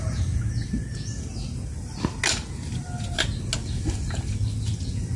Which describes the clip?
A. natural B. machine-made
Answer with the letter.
A